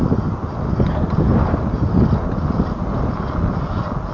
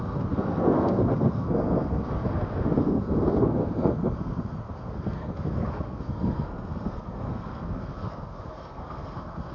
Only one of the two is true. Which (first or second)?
first